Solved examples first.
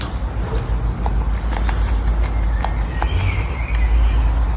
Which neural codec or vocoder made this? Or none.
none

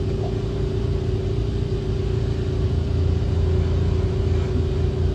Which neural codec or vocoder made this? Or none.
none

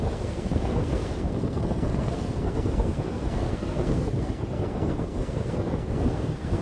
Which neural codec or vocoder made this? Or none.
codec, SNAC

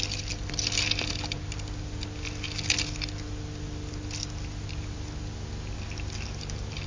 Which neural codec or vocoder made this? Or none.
none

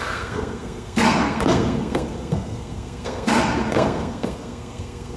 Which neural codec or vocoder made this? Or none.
codec, SNAC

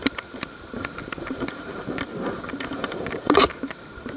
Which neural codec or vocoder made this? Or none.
vocoder, BigVGAN v2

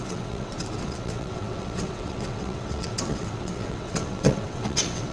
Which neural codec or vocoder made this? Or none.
vocoder, WaveNeXt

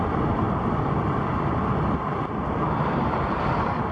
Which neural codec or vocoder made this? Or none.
vocoder, BigVGAN v2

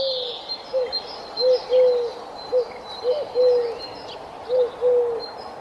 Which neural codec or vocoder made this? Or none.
none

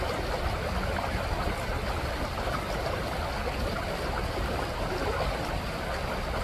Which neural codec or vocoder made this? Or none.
none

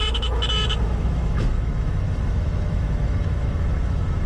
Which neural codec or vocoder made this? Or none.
autoencoder, DAC-VAE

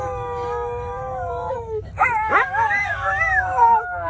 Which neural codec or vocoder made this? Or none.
autoencoder, DAC-VAE